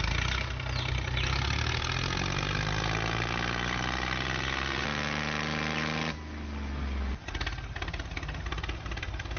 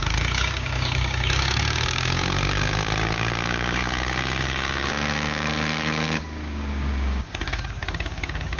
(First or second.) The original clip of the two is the first